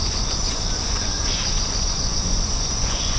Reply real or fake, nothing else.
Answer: fake